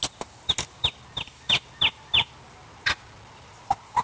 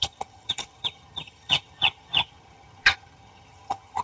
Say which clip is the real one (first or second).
first